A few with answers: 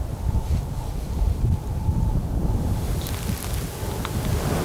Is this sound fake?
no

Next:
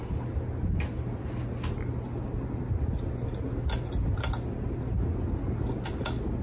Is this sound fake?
no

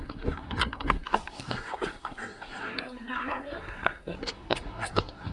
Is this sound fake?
yes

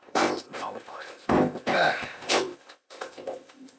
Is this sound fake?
yes